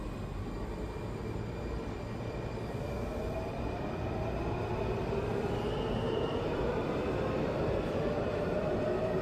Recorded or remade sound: recorded